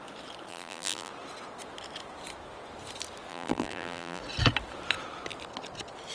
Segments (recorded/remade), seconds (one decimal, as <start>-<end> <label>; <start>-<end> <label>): 0.0-0.5 recorded; 0.5-1.1 remade; 1.1-3.3 recorded; 3.3-4.2 remade; 4.2-6.1 recorded